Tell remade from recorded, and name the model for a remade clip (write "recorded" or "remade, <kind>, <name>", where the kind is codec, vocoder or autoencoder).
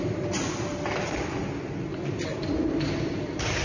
recorded